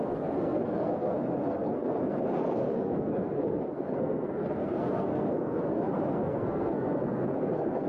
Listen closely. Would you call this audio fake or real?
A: fake